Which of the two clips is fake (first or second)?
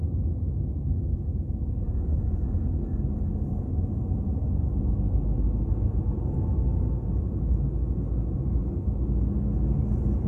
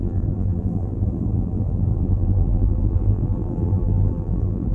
second